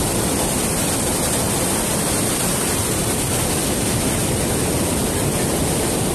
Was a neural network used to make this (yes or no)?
yes